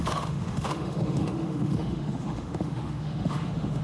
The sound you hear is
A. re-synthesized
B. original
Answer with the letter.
A